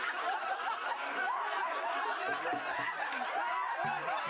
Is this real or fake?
real